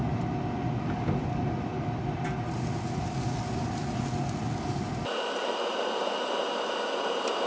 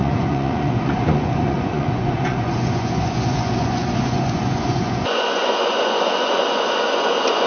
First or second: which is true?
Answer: first